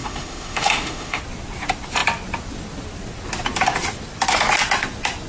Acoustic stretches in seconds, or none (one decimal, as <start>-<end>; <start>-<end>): 1.2-5.3